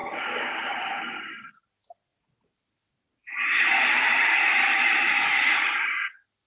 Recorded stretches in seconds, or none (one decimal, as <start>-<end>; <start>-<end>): 1.2-2.1; 5.4-6.5